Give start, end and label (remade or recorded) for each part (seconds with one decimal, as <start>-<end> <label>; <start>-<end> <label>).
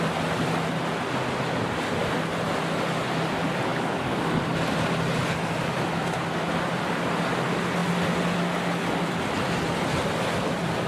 0.0-3.7 recorded; 3.7-4.4 remade; 4.4-10.9 recorded